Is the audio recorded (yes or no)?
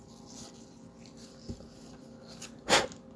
yes